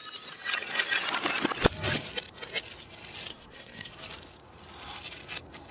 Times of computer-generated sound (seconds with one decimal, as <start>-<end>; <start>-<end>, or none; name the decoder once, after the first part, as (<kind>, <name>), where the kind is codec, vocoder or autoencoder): 3.3-3.9 (codec, SNAC)